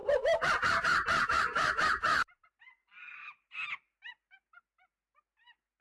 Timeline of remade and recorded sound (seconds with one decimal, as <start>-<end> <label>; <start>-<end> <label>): 0.0-2.5 remade; 2.5-3.0 recorded; 3.0-4.6 remade; 4.6-5.8 recorded